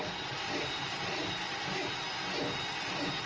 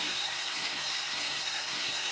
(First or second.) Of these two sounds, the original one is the first